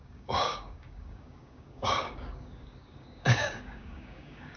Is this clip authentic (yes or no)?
no